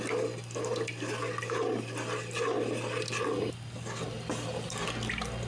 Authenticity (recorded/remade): recorded